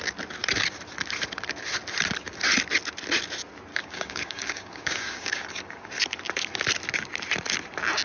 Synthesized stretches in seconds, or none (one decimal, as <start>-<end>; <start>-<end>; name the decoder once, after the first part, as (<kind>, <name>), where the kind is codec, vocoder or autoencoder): 3.7-5.9 (codec, DAC)